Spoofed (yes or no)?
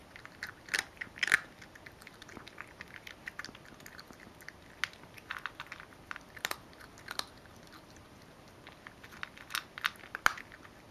no